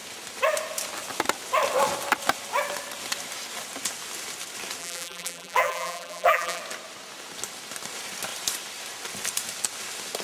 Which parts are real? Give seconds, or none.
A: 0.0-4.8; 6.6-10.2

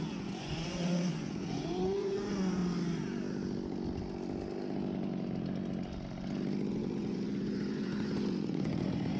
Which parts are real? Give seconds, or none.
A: 2.6-6.7

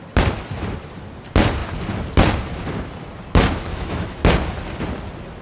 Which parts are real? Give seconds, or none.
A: 0.0-3.7; 4.2-5.4